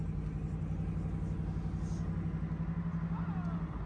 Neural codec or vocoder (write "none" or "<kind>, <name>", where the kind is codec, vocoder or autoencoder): none